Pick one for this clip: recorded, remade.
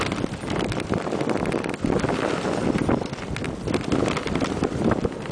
recorded